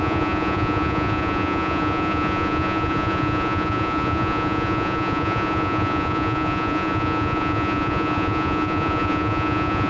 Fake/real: fake